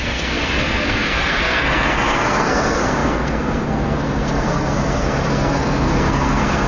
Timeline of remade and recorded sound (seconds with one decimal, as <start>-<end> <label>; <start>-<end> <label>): 0.0-6.7 remade